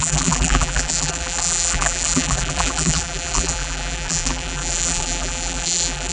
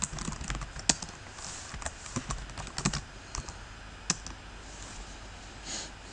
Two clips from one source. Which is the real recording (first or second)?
second